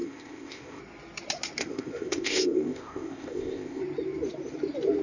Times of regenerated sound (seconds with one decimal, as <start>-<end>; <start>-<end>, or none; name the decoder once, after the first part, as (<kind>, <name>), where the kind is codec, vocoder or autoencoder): 0.0-0.8 (codec, ZipCodec); 1.6-3.8